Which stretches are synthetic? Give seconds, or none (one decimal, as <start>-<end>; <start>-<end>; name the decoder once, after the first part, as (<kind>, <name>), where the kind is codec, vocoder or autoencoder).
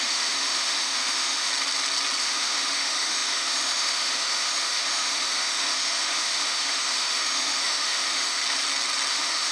0.0-1.5 (autoencoder, DAC-VAE); 2.2-8.4; 9.1-9.5